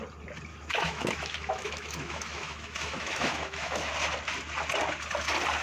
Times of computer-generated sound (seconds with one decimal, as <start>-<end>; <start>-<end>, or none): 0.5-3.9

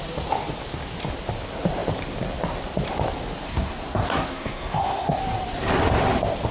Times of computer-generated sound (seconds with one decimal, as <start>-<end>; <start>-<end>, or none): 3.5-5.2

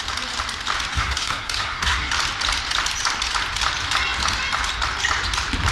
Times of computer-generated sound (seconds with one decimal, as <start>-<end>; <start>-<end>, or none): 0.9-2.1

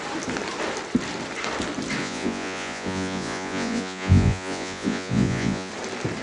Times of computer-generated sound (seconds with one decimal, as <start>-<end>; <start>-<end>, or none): 2.0-5.7

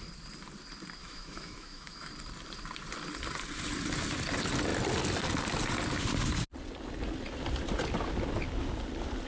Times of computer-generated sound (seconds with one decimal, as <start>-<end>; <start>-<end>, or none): 1.0-2.1

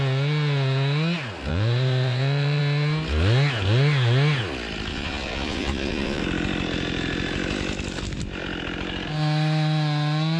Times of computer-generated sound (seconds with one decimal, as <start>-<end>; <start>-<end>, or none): 1.5-2.6; 4.9-6.2

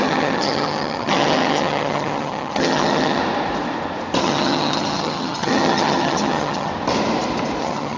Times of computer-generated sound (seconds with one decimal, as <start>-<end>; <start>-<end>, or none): 0.0-3.2; 4.2-6.7; 7.6-8.0

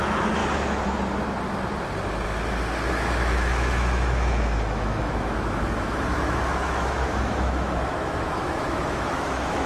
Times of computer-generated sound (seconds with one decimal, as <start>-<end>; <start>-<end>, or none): 0.0-0.4; 2.9-9.7